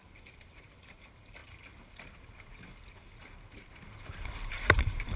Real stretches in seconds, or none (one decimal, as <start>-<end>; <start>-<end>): 1.4-4.5